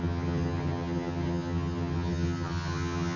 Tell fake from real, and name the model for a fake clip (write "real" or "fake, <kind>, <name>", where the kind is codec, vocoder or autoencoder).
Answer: fake, vocoder, HiFi-GAN